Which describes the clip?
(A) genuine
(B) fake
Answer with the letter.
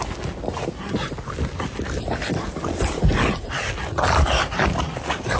A